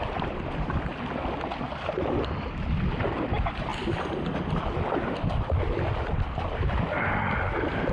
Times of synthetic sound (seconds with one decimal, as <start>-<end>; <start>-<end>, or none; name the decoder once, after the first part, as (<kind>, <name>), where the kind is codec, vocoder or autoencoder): none